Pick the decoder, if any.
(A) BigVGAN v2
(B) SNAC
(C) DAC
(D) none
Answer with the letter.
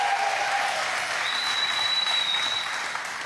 D